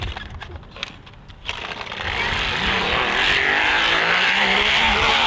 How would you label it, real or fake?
real